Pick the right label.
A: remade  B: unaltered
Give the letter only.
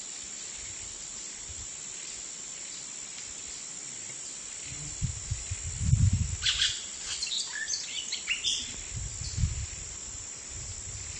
B